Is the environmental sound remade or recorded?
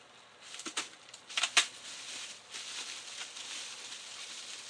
recorded